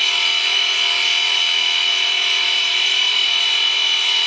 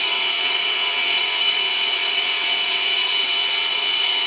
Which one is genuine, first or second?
first